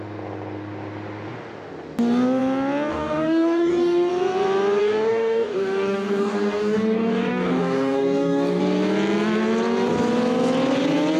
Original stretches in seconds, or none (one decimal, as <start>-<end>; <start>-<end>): 0.0-2.9; 4.1-4.8; 8.6-11.2